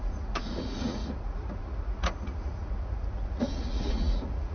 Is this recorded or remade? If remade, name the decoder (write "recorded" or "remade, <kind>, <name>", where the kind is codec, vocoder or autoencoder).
remade, vocoder, Vocos